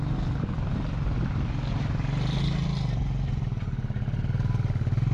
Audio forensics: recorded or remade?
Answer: recorded